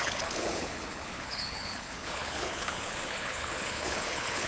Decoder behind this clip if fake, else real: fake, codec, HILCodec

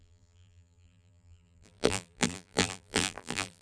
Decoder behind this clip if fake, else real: fake, vocoder, BigVGAN v2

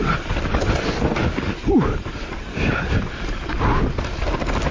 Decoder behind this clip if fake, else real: real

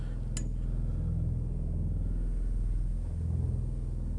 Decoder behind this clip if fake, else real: real